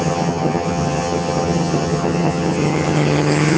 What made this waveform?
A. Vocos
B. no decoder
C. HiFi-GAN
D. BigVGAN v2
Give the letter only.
C